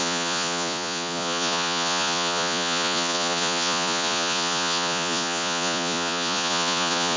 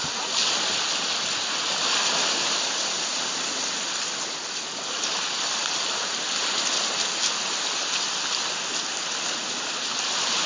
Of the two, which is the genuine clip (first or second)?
second